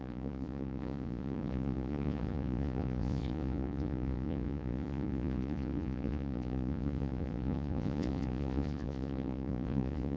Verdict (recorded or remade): remade